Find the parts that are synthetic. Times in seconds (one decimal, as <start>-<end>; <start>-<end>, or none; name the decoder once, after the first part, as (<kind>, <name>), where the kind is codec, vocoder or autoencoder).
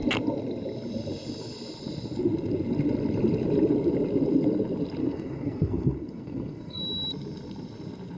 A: 5.0-6.8 (codec, SNAC)